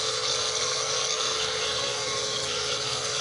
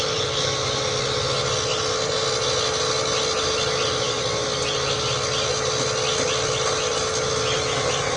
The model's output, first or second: first